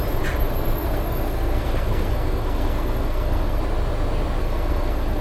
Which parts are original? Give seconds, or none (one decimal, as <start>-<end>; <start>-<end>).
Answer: 0.0-0.5; 3.6-4.4